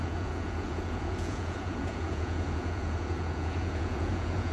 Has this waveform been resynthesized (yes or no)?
yes